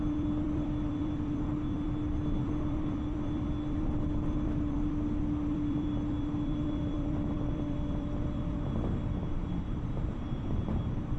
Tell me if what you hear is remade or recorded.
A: remade